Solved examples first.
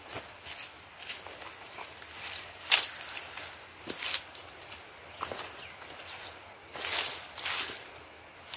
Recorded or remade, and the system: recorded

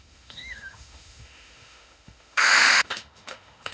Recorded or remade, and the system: remade, autoencoder, DAC-VAE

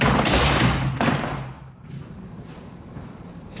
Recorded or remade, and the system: remade, vocoder, BigVGAN v2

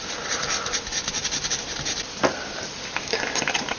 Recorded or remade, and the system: recorded